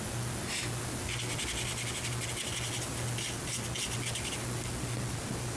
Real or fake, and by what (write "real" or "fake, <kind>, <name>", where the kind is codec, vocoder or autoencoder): real